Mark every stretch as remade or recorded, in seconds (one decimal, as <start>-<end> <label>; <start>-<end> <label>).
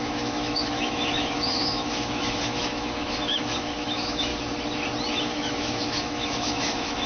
0.0-4.3 remade; 4.3-5.2 recorded; 5.2-7.1 remade